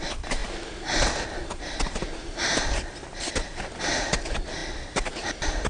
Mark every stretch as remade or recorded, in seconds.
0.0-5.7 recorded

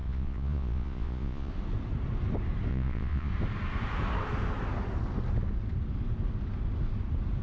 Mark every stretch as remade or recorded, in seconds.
0.0-1.5 remade; 1.5-2.7 recorded; 2.7-3.3 remade; 3.3-7.4 recorded

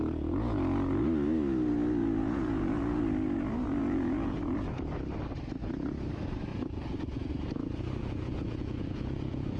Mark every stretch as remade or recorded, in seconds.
0.0-2.0 recorded; 2.0-3.0 remade; 3.0-3.8 recorded; 3.8-4.4 remade; 4.4-6.5 recorded; 6.5-7.3 remade; 7.3-8.0 recorded; 8.0-9.6 remade